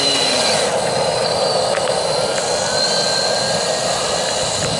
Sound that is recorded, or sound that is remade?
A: recorded